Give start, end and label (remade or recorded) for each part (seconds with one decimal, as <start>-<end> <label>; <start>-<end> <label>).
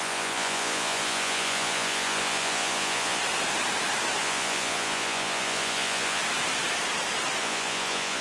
0.0-3.2 remade; 3.2-4.2 recorded; 4.2-6.2 remade; 6.2-7.4 recorded; 7.4-8.2 remade